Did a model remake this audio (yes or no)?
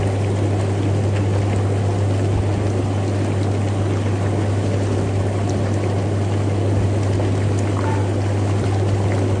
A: no